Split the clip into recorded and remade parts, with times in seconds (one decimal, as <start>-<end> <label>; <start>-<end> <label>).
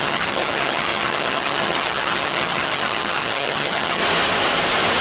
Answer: 0.0-4.0 remade; 4.0-5.0 recorded